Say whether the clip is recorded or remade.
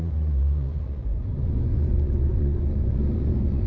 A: remade